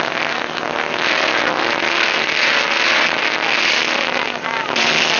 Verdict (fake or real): real